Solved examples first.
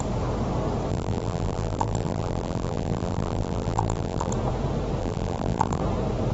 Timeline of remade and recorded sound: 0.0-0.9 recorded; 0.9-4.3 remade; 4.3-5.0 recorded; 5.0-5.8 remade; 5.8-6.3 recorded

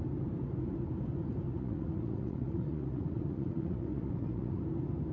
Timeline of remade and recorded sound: 0.0-1.5 recorded; 1.5-4.6 remade; 4.6-5.1 recorded